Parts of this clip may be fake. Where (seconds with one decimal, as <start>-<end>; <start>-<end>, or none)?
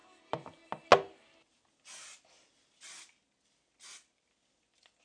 none